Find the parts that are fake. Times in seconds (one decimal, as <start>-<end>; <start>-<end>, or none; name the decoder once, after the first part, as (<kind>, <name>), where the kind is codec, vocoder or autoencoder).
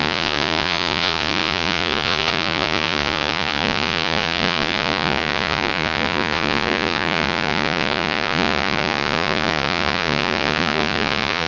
0.0-11.5 (vocoder, Vocos)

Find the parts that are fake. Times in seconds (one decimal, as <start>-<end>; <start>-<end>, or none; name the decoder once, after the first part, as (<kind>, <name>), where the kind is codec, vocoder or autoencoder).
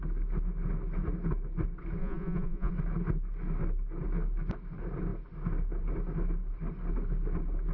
2.0-2.7 (vocoder, Vocos)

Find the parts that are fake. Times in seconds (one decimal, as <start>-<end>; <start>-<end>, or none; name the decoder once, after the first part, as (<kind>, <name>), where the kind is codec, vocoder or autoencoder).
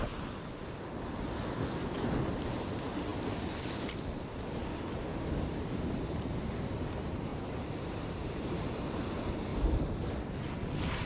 7.3-8.7 (vocoder, BigVGAN v2)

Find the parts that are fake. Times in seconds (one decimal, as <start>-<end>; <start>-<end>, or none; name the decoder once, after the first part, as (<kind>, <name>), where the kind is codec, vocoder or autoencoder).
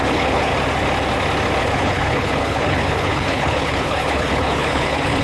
0.0-0.5 (codec, HILCodec); 1.6-5.2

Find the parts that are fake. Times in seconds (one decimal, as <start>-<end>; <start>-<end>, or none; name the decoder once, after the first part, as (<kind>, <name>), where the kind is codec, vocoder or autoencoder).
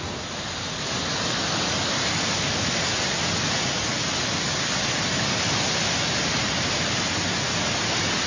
none